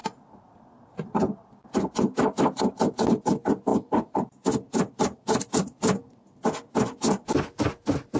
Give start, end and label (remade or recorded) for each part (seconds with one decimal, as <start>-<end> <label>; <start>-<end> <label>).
0.0-8.2 recorded